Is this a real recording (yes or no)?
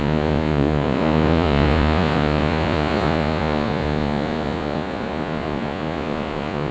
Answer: no